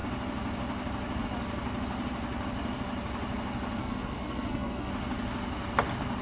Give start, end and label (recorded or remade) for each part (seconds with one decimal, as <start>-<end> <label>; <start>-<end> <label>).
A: 0.0-3.8 recorded; 3.8-4.9 remade; 4.9-6.2 recorded

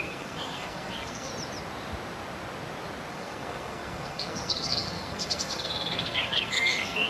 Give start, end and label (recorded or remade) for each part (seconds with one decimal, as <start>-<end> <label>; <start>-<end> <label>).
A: 0.0-1.3 remade; 1.3-3.1 recorded; 3.1-7.1 remade

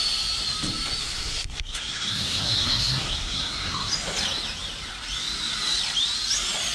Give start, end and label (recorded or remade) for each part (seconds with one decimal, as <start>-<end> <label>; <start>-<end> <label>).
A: 0.0-1.0 recorded; 1.0-3.9 remade; 3.9-6.7 recorded